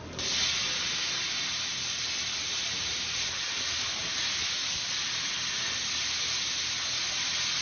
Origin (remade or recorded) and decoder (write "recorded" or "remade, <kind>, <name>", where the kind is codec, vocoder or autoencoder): recorded